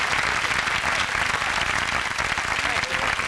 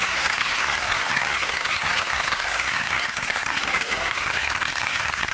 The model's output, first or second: second